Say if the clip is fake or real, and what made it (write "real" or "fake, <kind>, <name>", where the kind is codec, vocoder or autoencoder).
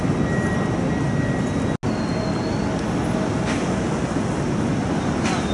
real